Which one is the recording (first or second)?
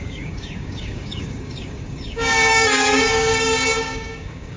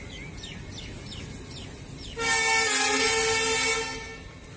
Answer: second